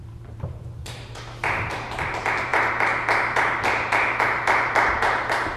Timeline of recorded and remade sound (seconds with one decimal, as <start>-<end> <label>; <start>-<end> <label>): 0.0-5.6 remade